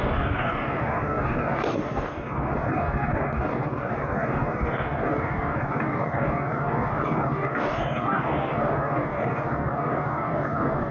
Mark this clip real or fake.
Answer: fake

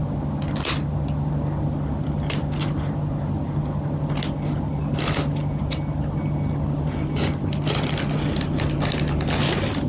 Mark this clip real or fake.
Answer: real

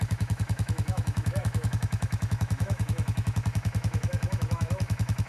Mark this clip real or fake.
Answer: fake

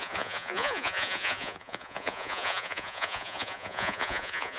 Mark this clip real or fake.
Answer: fake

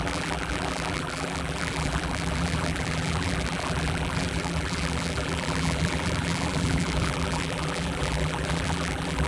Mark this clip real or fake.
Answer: fake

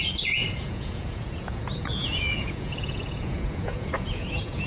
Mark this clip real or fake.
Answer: fake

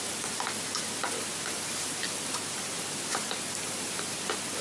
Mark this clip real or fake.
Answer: fake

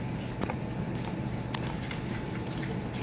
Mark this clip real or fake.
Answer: real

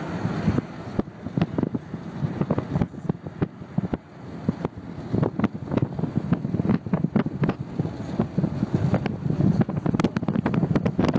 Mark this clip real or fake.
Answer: real